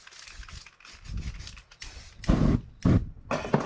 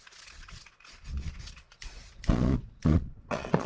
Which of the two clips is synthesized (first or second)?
second